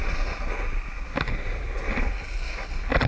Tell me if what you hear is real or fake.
real